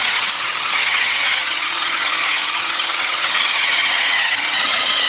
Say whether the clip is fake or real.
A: fake